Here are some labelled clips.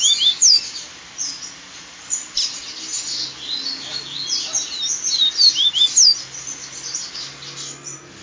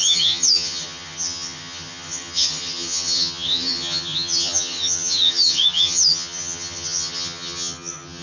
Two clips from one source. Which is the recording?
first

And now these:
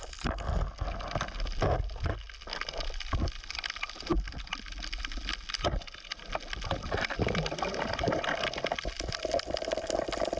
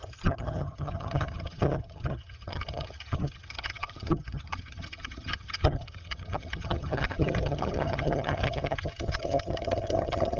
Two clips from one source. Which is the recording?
first